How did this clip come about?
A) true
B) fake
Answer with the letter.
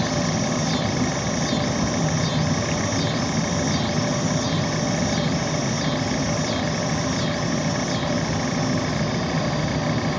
A